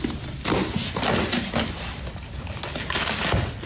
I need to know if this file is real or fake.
real